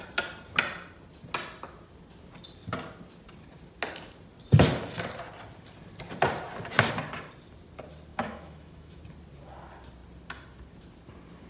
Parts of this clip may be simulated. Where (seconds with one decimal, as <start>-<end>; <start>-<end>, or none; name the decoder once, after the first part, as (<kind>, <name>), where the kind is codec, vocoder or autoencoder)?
8.1-9.0 (autoencoder, DAC-VAE)